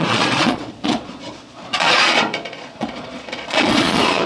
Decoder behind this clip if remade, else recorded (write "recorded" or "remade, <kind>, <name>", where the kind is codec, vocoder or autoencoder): remade, vocoder, Vocos